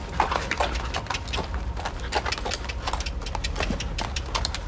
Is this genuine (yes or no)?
yes